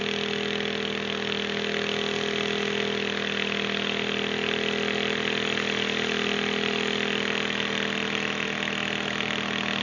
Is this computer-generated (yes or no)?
no